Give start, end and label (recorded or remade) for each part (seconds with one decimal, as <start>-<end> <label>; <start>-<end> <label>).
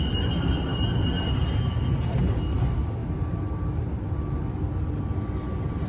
0.0-5.9 recorded